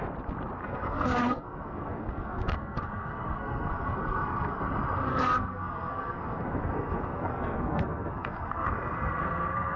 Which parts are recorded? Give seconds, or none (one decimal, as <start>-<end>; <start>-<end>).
0.0-0.6; 4.6-5.1